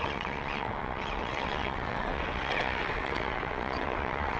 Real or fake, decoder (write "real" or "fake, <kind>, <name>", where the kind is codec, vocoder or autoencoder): fake, vocoder, WaveNeXt